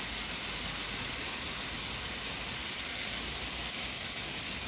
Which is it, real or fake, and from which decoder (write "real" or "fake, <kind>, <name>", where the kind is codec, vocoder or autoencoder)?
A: real